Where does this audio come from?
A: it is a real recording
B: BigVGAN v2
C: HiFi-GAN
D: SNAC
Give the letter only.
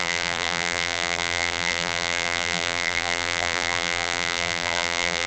B